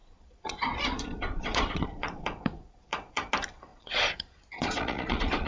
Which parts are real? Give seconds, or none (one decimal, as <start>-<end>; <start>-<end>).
3.3-3.7